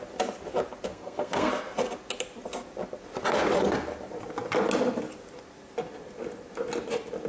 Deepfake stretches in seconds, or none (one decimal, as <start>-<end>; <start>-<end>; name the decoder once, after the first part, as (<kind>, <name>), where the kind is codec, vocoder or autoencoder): 0.9-1.5 (codec, SNAC)